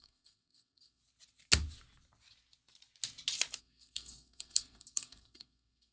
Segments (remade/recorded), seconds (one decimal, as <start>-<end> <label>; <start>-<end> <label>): 0.0-1.0 remade; 1.0-3.6 recorded; 3.6-5.9 remade